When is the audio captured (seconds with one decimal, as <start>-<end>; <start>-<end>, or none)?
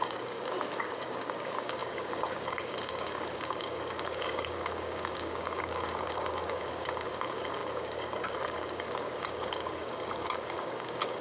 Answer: none